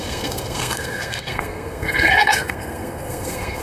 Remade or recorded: remade